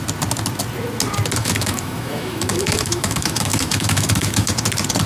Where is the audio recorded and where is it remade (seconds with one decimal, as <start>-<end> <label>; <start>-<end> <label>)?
0.0-1.4 recorded; 1.4-4.5 remade; 4.5-5.1 recorded